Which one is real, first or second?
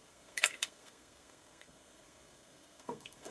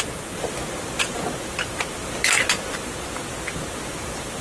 second